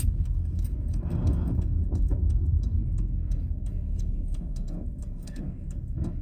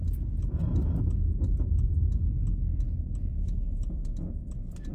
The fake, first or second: first